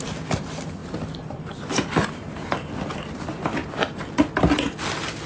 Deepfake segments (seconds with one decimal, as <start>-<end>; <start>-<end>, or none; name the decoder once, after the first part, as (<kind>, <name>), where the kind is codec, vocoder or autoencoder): 0.8-1.9 (vocoder, BigVGAN v2)